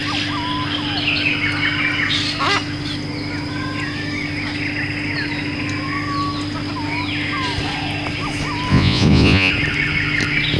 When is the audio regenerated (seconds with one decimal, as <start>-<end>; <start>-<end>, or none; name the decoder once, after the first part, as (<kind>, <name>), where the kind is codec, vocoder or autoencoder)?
8.7-9.5 (vocoder, Vocos)